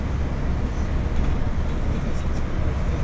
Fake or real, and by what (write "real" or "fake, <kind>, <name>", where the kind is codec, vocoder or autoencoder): real